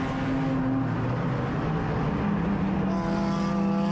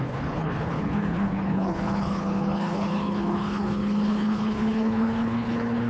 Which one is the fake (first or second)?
second